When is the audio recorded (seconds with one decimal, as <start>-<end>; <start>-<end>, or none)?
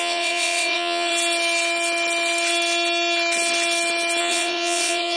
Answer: 1.1-4.2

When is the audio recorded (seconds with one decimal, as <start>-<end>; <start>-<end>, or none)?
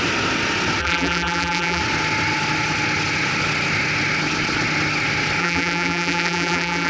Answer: 0.0-0.8; 1.8-5.4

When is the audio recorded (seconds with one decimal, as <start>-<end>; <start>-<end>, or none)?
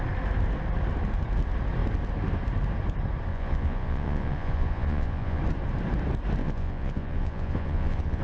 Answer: 0.0-3.3; 5.4-6.4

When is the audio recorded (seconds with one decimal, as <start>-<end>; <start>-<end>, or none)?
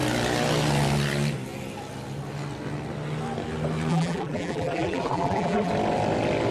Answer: 0.0-3.9; 5.7-6.5